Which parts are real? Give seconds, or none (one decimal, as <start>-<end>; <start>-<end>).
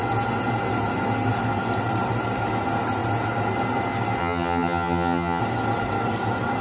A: 0.0-4.2; 5.4-6.6